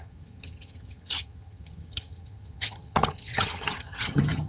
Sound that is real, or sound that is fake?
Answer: fake